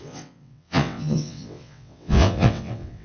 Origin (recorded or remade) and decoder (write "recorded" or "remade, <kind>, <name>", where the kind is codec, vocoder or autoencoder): remade, vocoder, WaveNeXt